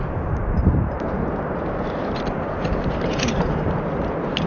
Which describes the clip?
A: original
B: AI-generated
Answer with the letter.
B